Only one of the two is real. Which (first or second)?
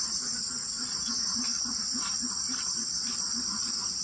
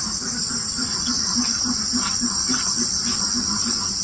second